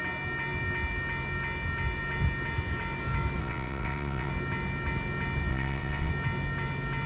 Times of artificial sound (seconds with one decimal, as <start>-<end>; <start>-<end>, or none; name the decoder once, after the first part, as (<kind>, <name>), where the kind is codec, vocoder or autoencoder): 3.4-4.3 (vocoder, WaveNeXt); 5.5-6.1